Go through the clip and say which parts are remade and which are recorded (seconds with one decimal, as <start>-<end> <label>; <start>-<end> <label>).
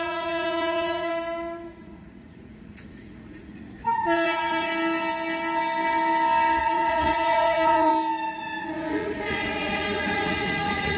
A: 0.0-1.1 remade; 1.1-1.8 recorded; 1.8-4.7 remade; 4.7-6.6 recorded; 6.6-7.9 remade; 7.9-8.6 recorded; 8.6-11.0 remade